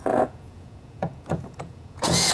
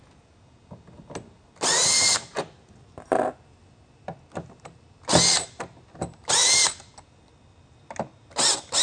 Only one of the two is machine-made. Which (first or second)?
first